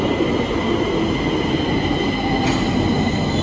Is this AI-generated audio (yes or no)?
no